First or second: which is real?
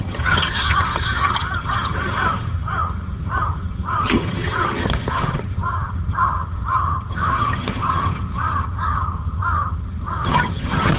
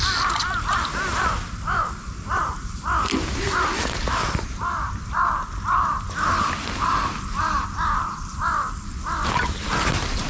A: second